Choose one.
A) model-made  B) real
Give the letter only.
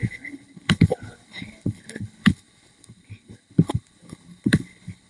A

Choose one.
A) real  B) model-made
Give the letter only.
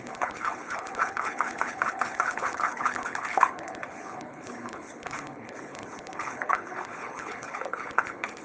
B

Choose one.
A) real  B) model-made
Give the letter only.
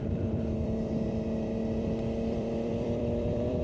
B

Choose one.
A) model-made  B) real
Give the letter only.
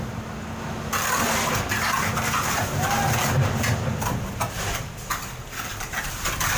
B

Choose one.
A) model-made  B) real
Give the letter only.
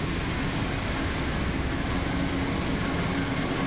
B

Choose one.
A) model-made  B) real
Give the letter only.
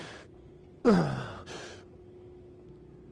B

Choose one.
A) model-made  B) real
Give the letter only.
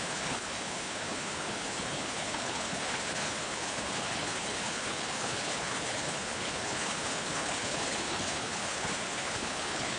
A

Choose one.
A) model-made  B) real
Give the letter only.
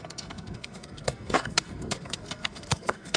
A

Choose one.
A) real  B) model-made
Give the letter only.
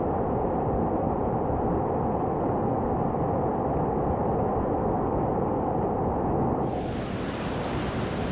A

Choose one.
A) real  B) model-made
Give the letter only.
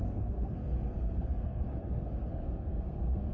B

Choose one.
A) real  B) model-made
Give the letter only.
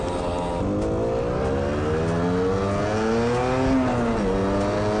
A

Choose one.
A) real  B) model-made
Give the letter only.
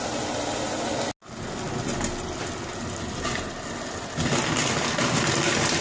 A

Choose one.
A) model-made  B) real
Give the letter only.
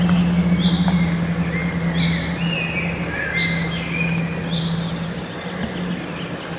B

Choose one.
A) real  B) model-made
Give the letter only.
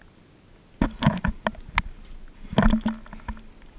A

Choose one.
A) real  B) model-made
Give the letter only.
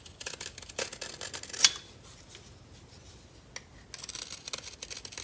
A